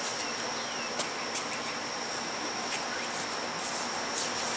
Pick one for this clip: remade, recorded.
recorded